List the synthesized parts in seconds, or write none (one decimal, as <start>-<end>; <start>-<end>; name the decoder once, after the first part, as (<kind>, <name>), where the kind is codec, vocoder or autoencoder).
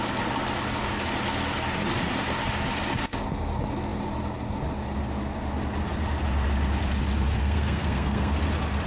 7.4-8.5 (codec, SNAC)